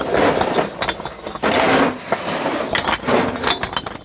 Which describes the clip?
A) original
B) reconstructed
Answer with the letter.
A